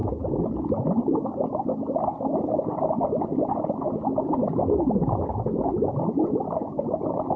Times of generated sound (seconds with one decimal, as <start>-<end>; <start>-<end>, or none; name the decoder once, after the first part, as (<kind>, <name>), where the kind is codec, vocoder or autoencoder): none